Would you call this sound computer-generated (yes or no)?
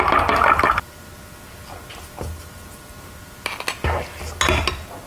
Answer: no